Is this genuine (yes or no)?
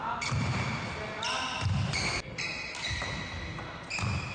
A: yes